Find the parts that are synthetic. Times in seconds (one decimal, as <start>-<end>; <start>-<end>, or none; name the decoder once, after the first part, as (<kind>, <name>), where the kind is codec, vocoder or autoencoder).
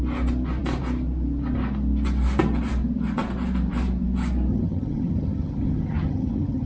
4.5-6.7 (vocoder, HiFi-GAN)